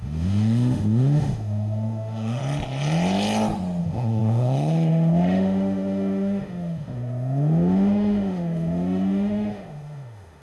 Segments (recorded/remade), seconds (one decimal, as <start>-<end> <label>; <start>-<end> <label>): 0.0-2.4 remade; 2.4-3.8 recorded; 3.8-10.4 remade